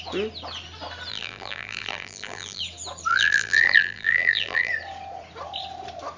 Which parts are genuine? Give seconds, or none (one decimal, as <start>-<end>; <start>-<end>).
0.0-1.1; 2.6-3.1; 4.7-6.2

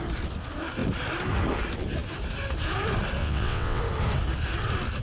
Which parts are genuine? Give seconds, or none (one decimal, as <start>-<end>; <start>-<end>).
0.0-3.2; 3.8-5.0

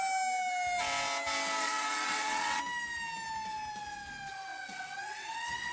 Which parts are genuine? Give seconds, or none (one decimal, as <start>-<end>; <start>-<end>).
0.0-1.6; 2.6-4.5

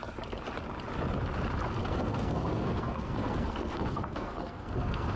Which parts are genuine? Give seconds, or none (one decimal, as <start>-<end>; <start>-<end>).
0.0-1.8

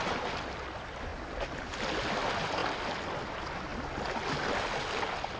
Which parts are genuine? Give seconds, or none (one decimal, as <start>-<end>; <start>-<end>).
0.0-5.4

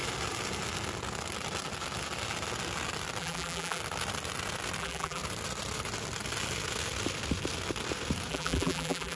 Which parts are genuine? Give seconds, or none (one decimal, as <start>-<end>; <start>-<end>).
0.0-3.2; 3.8-4.8; 5.2-8.3